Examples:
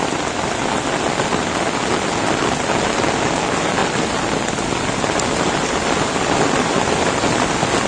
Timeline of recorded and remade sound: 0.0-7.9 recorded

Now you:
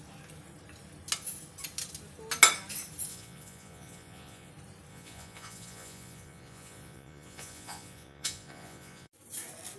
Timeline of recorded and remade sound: 0.0-3.1 recorded; 3.1-4.5 remade; 4.5-4.9 recorded; 4.9-9.1 remade; 9.1-9.8 recorded

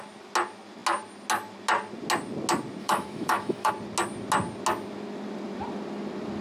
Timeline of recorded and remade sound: 0.0-2.8 recorded; 2.8-3.7 remade; 3.7-6.4 recorded

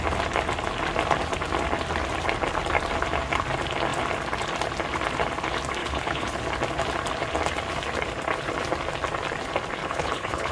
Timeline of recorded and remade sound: 0.0-5.8 recorded; 5.8-6.4 remade; 6.4-9.8 recorded; 9.8-10.5 remade

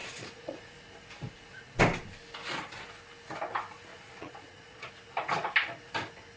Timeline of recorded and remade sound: 0.0-0.7 remade; 0.7-3.9 recorded; 3.9-4.9 remade; 4.9-6.4 recorded

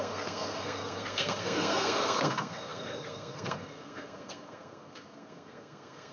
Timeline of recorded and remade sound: 0.0-6.1 remade

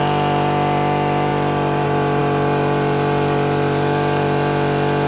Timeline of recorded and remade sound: 0.0-5.1 recorded